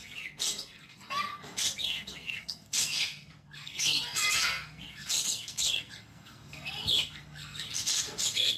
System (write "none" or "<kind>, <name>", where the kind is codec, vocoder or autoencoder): codec, SNAC